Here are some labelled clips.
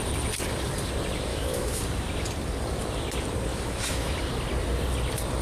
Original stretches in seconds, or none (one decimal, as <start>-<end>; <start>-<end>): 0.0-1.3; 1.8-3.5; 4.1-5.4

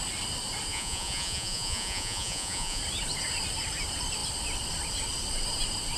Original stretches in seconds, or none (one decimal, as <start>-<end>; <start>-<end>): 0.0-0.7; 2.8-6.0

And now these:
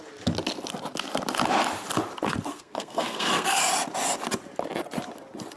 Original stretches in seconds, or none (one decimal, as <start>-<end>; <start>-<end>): 0.0-2.5; 3.6-5.6

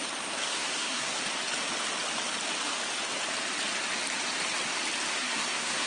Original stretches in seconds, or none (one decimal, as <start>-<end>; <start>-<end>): 0.0-0.5; 1.2-5.1